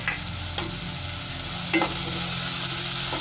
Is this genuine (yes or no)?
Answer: yes